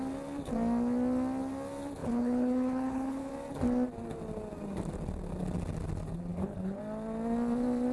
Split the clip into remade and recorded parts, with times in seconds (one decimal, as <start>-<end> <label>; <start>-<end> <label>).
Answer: 0.0-2.0 recorded; 2.0-3.3 remade; 3.3-6.3 recorded; 6.3-6.8 remade; 6.8-7.9 recorded